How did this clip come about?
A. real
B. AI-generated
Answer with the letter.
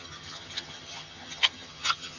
B